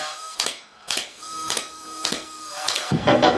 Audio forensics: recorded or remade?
remade